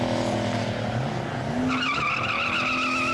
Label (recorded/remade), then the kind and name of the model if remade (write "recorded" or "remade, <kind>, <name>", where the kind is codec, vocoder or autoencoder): recorded